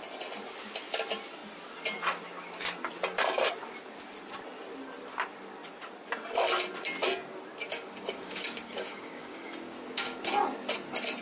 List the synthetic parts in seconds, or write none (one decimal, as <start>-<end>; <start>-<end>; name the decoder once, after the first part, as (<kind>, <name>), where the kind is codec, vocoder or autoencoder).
7.7-10.2 (codec, DAC)